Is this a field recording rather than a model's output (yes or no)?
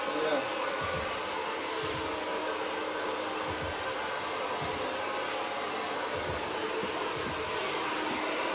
yes